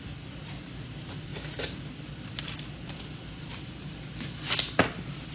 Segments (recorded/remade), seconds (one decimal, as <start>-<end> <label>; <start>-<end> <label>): 0.0-5.3 recorded